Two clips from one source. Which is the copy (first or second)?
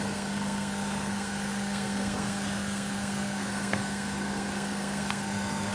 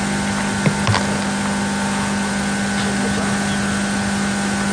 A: first